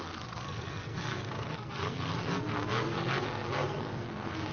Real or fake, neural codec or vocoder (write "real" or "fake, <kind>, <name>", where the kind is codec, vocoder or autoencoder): fake, codec, SNAC